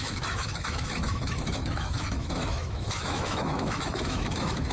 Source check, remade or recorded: remade